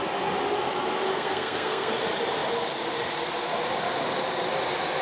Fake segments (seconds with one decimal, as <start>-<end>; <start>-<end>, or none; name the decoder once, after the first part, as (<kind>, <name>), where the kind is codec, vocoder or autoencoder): 1.1-1.9 (codec, SNAC)